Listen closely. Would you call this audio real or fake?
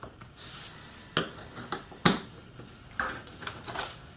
real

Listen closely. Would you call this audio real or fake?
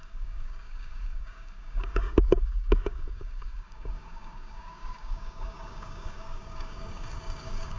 fake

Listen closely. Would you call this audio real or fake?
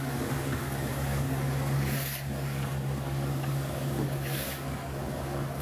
fake